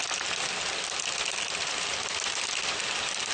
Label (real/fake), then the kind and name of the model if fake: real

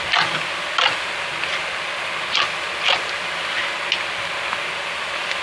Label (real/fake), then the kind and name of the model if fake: real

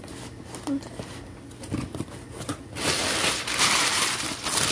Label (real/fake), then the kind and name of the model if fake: real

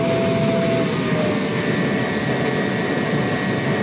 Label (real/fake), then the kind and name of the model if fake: real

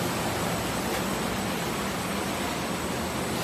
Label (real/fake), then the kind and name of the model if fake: real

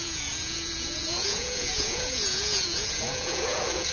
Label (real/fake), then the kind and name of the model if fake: fake, vocoder, Vocos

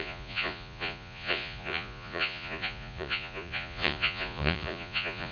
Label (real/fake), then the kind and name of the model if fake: fake, vocoder, Vocos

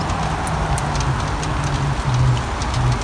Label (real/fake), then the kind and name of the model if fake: real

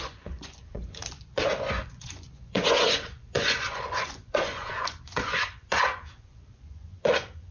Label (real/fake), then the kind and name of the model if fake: fake, vocoder, Vocos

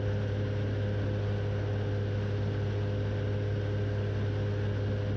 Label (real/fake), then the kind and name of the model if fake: real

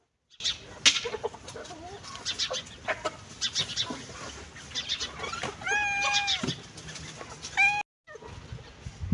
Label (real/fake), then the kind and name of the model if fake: real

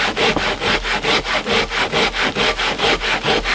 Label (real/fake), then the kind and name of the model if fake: real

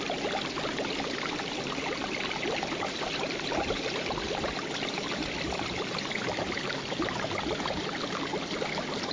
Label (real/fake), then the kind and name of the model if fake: real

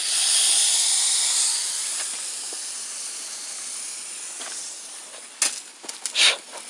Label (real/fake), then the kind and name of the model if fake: real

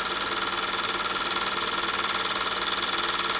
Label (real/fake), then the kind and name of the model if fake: real